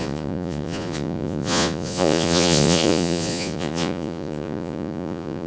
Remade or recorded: remade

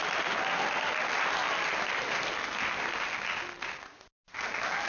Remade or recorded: recorded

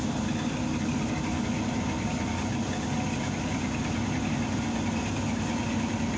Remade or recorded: recorded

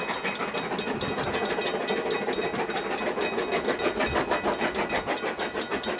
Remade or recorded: recorded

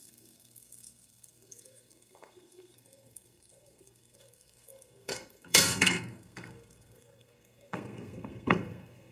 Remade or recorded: remade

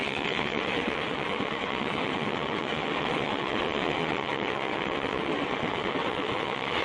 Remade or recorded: remade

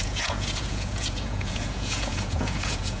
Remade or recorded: remade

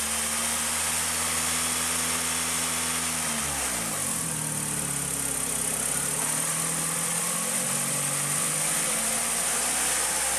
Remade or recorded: recorded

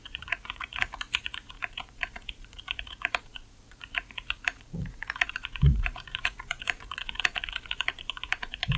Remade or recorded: remade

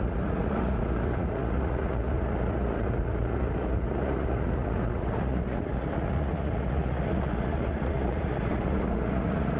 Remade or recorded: remade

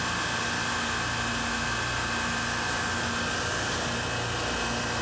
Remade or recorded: recorded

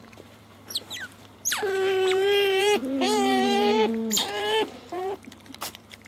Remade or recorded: remade